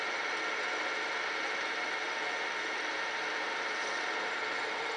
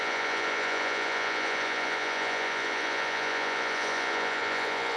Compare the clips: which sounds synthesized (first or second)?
second